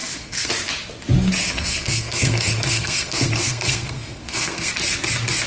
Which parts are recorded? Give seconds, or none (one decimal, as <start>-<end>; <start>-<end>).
0.5-1.4; 4.7-5.5